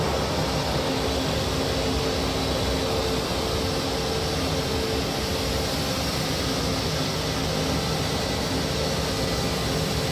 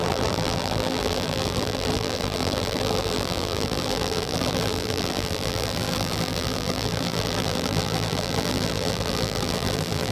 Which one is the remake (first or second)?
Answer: second